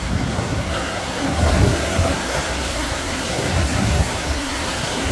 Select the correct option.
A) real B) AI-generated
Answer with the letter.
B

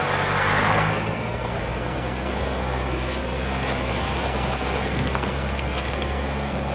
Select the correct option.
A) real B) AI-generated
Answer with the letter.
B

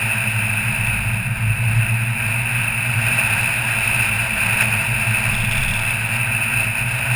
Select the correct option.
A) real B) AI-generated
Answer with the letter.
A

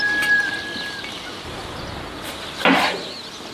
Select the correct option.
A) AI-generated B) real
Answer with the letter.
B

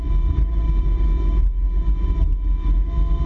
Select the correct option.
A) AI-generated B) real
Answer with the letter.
B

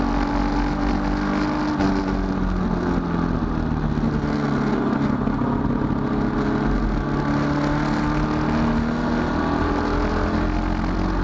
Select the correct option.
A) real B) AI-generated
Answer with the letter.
A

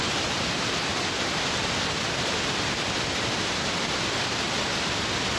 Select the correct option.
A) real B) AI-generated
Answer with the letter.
A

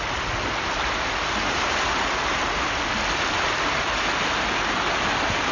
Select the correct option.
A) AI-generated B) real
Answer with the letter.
B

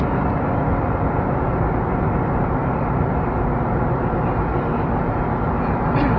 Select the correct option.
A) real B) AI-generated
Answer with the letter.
A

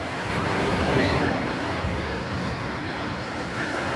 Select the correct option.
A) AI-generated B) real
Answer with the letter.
A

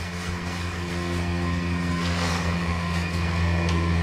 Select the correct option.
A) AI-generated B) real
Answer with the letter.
A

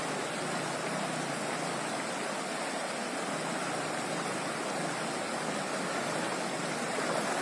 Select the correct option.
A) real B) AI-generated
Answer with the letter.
A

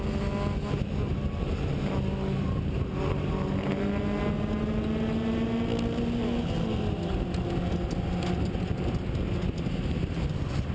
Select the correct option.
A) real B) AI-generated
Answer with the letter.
A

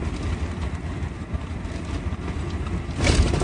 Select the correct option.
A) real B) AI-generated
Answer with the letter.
A